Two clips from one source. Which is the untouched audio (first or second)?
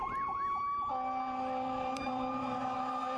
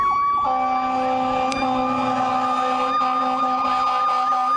second